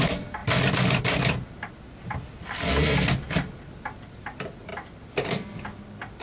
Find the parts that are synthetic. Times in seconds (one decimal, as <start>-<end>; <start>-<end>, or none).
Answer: 0.4-1.0; 4.7-5.8